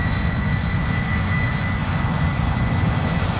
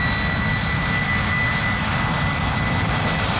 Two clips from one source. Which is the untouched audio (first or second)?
second